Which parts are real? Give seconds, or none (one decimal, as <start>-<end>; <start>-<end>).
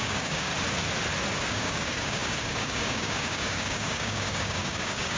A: 0.5-1.4